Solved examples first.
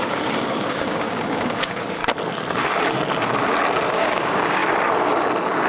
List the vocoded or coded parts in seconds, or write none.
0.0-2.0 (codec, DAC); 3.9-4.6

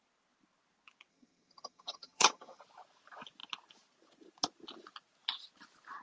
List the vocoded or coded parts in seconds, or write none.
1.1-2.6 (vocoder, HiFi-GAN)

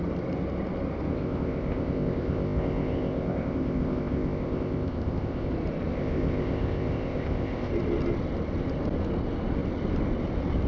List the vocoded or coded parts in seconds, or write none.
1.1-5.5 (codec, ZipCodec); 5.9-7.7

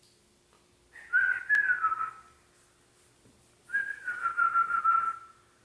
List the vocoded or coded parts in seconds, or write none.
3.7-4.8 (vocoder, BigVGAN v2)